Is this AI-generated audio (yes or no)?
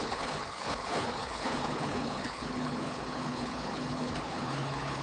yes